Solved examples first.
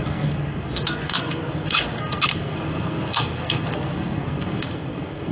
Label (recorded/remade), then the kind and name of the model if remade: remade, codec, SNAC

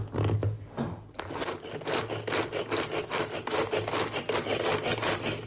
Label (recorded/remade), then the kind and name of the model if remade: recorded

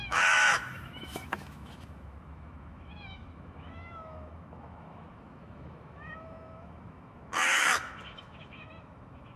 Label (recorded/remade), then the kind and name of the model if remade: remade, autoencoder, DAC-VAE